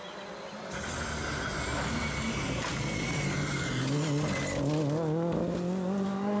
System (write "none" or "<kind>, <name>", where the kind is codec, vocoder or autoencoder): none